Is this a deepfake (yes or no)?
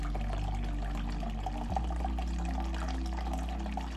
no